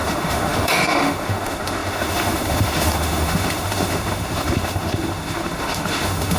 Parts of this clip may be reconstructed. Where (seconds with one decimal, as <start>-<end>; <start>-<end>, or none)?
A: 0.0-6.4